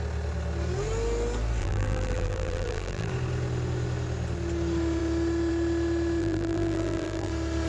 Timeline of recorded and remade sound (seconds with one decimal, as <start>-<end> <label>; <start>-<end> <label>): 0.0-1.6 recorded; 1.6-3.1 remade; 3.1-6.2 recorded; 6.2-7.3 remade; 7.3-7.7 recorded